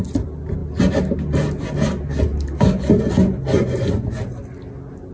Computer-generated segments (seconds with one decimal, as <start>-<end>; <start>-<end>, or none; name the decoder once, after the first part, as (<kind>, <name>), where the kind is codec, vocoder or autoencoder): none